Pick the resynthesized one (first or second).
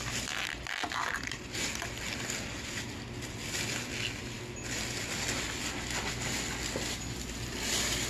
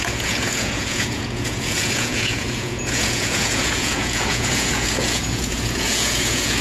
second